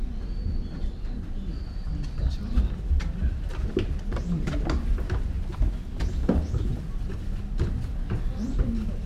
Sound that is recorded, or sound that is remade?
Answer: recorded